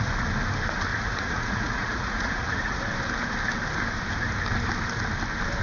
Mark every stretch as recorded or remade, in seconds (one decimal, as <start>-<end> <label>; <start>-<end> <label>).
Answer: 0.0-0.9 recorded; 0.9-2.8 remade; 2.8-5.6 recorded